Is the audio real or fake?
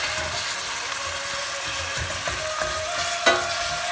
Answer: real